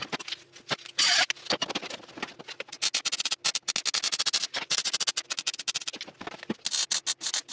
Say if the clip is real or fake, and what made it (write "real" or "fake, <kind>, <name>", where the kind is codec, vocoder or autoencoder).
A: real